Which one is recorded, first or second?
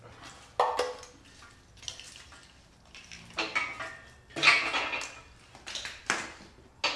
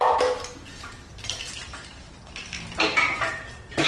first